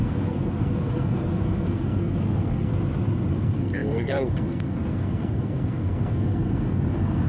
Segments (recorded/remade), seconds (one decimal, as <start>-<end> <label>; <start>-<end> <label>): 0.0-2.7 remade; 2.7-3.3 recorded; 3.3-7.3 remade